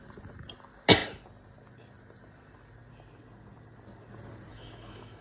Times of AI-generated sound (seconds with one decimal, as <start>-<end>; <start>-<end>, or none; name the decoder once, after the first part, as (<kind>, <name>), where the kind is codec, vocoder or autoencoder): 4.5-5.2 (autoencoder, DAC-VAE)